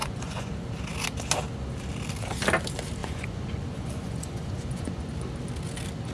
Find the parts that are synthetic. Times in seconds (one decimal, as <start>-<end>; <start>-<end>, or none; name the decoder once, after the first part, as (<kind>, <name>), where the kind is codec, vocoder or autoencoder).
0.0-0.5 (vocoder, Vocos); 3.0-5.1